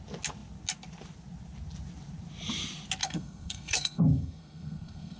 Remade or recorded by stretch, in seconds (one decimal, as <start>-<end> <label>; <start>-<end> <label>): 0.0-3.0 recorded; 3.0-5.2 remade